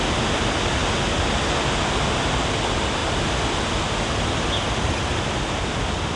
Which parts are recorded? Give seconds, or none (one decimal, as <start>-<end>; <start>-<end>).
0.0-6.2